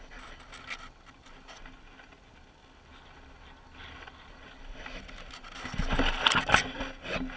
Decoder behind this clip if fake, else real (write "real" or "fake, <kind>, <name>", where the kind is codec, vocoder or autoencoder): real